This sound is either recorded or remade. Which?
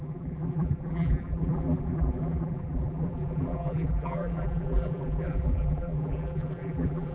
remade